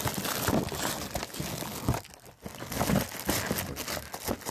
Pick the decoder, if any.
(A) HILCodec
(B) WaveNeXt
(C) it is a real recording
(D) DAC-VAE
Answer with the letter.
C